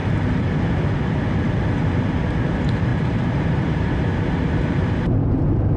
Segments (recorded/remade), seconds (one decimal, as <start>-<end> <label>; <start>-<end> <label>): 0.0-2.5 recorded; 2.5-5.8 remade